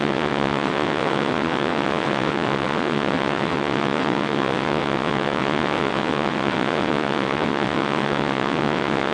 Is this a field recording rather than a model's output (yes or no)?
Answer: no